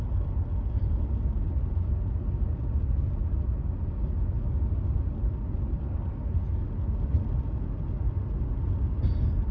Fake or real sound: real